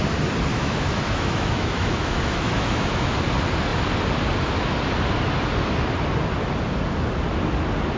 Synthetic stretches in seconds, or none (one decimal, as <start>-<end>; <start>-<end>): 0.5-3.1